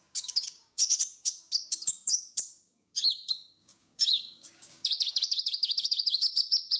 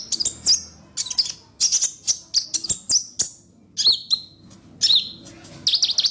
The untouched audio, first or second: second